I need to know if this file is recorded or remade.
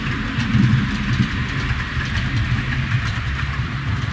recorded